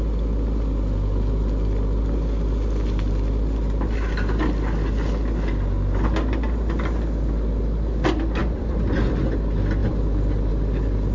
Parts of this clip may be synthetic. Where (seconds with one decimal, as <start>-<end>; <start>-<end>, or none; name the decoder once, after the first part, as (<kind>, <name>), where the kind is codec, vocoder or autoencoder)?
8.4-9.1 (vocoder, BigVGAN v2); 9.8-10.5